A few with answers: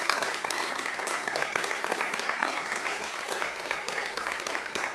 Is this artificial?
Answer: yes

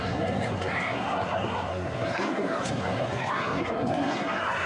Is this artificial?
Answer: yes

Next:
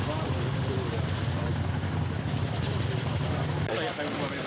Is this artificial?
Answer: no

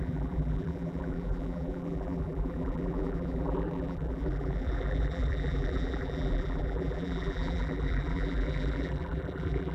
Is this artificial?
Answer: yes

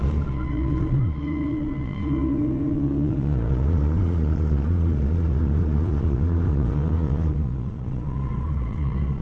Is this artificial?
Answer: yes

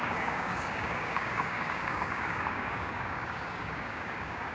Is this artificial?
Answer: yes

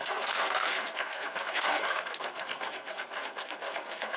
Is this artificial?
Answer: yes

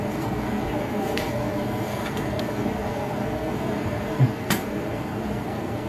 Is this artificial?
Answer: yes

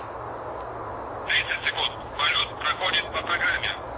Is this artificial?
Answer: no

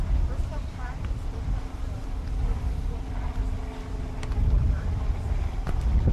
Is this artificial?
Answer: yes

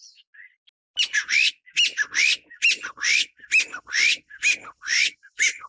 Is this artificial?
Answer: no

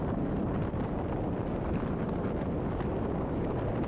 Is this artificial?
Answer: no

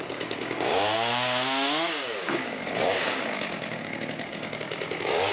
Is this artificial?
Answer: yes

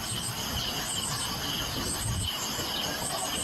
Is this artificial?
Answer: no